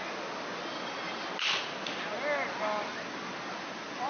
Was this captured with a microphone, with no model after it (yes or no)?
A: yes